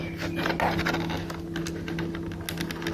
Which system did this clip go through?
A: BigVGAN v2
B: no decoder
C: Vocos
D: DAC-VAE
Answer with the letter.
B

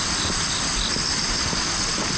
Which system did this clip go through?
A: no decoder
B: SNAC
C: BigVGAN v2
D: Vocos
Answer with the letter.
A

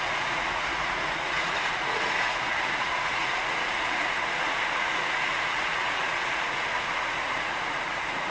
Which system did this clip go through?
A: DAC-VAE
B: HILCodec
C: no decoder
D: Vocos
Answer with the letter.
D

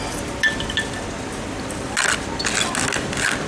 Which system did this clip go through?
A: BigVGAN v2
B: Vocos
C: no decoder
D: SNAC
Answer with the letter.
C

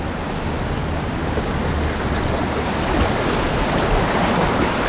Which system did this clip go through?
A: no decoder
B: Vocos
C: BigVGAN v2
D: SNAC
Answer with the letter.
A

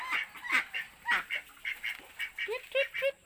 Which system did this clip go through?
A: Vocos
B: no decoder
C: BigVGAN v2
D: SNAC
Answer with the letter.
B